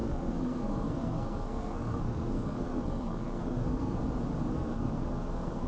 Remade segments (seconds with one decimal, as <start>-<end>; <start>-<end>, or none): 0.0-4.0; 4.5-5.7